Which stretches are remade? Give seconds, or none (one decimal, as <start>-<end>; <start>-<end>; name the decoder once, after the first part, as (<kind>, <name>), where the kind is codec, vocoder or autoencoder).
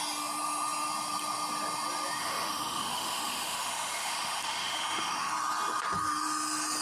2.2-5.3 (autoencoder, DAC-VAE)